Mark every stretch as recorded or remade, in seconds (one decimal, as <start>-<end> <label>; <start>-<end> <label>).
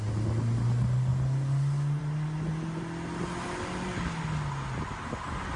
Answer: 0.0-5.6 recorded